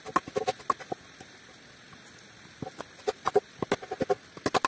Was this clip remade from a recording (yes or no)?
no